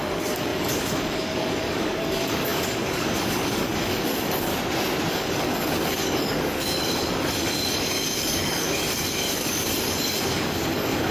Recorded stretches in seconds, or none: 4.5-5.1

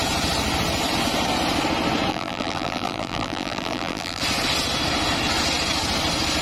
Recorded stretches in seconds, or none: 0.0-2.1; 4.2-6.4

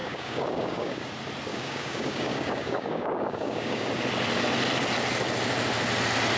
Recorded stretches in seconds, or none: 1.1-1.5; 3.9-6.4

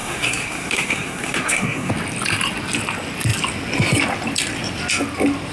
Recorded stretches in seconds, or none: 1.9-5.5

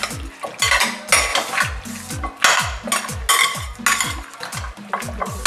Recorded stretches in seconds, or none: 0.0-5.5

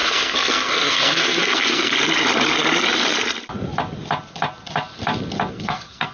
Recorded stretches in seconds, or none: 1.9-5.5

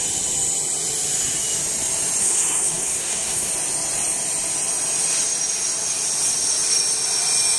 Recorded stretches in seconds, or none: 0.0-2.2; 3.5-7.6

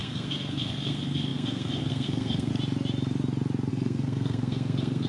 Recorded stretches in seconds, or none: 2.5-3.7